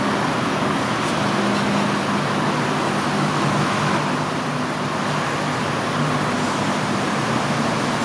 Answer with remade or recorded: recorded